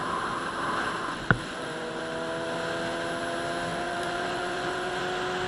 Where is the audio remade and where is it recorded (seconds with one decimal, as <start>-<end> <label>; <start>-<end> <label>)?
0.0-1.0 recorded; 1.0-2.0 remade; 2.0-3.7 recorded; 3.7-5.0 remade; 5.0-5.5 recorded